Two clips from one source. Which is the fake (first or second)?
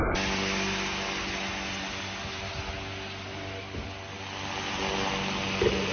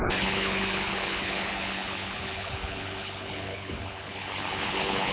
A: second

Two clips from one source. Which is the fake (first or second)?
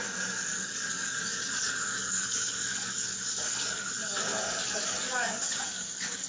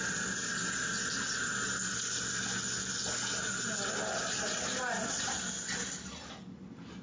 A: first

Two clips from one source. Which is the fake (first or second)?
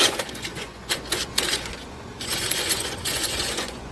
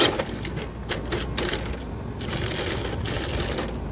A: first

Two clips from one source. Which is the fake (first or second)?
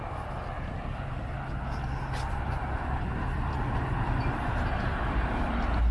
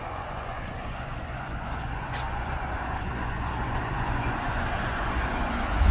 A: second